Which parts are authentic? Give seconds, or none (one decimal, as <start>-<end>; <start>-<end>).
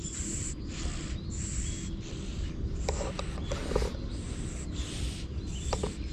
0.0-2.3; 3.0-6.1